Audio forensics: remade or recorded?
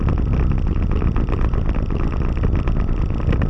recorded